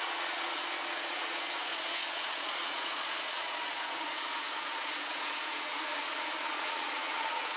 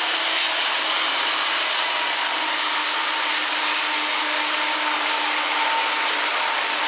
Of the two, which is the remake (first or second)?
first